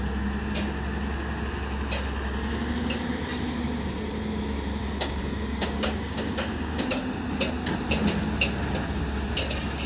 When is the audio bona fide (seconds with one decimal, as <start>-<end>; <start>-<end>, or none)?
0.0-4.8; 7.0-9.9